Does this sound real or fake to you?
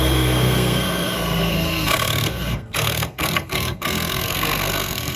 fake